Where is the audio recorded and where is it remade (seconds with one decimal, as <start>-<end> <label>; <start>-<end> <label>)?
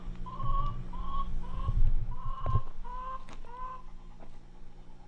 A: 0.0-5.1 recorded